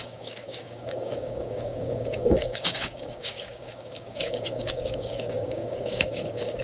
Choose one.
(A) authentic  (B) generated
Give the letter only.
B